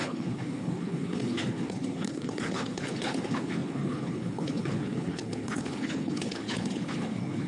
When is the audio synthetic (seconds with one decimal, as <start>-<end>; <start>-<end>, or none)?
0.0-7.5